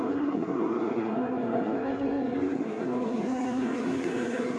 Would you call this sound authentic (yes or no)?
no